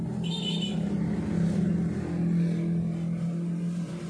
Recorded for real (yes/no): yes